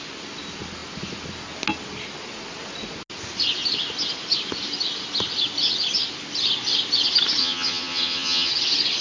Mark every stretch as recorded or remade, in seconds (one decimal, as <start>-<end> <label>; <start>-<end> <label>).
0.0-7.4 recorded; 7.4-8.5 remade; 8.5-9.0 recorded